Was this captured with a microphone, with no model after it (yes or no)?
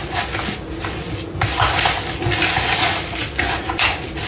yes